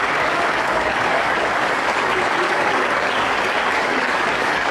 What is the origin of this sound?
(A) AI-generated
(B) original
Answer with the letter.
A